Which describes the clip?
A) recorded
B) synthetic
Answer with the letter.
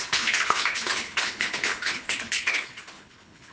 B